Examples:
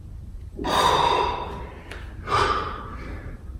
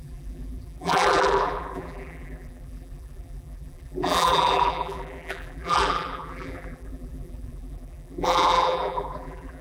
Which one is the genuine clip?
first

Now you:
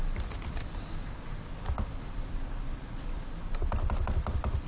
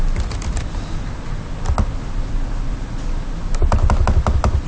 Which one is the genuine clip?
second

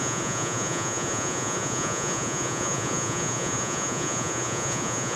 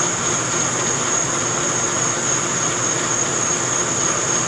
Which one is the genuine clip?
second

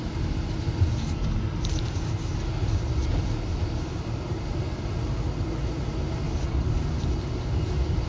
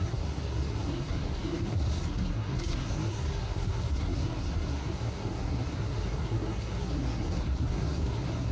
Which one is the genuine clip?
first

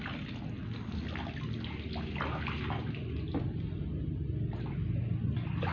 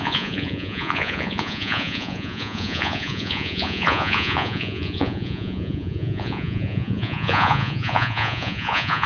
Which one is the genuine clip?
first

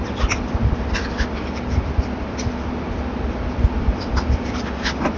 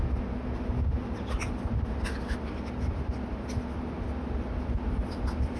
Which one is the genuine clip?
second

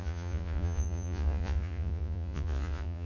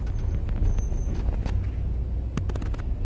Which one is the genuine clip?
second